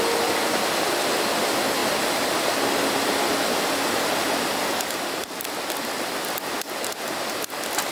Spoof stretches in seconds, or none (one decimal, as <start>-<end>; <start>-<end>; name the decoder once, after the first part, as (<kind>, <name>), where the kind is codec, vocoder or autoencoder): none